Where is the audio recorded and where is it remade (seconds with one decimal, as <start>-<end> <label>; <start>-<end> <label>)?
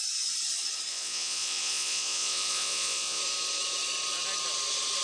0.0-0.9 recorded; 0.9-3.2 remade; 3.2-5.0 recorded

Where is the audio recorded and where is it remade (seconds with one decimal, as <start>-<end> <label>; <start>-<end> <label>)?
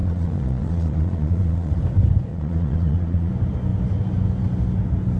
0.0-1.8 remade; 1.8-2.3 recorded; 2.3-3.3 remade; 3.3-5.2 recorded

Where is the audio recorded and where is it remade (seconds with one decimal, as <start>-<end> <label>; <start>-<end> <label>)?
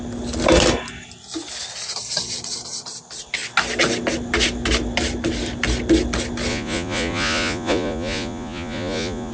0.0-6.5 recorded; 6.5-9.3 remade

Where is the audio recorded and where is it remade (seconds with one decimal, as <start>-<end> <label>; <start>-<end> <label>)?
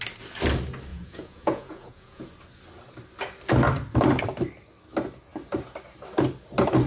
0.0-0.9 recorded; 0.9-2.2 remade; 2.2-6.9 recorded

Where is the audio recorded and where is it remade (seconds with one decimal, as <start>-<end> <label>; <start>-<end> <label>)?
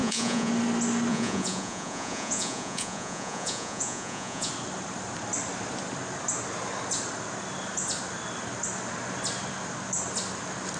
0.0-0.5 remade; 0.5-1.1 recorded; 1.1-4.5 remade; 4.5-10.8 recorded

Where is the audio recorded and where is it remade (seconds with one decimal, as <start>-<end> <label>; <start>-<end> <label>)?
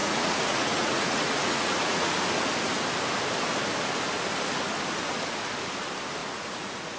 0.0-2.1 remade; 2.1-6.2 recorded; 6.2-7.0 remade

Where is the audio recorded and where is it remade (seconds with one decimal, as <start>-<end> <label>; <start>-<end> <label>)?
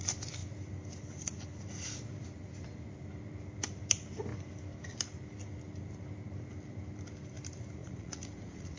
0.0-7.8 recorded; 7.8-8.8 remade